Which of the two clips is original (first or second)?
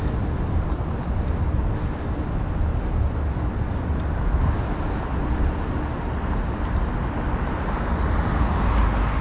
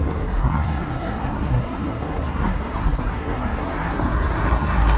first